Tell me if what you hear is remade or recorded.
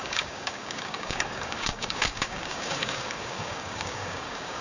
remade